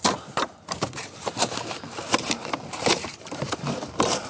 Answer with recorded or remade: remade